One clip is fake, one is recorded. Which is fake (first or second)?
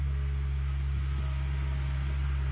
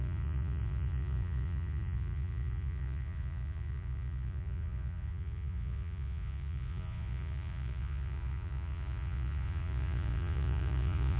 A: second